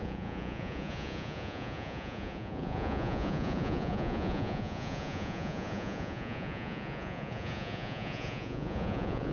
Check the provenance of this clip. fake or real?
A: fake